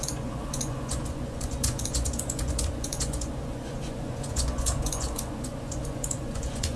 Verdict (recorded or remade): remade